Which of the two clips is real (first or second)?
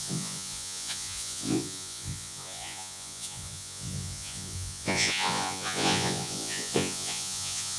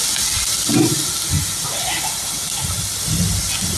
second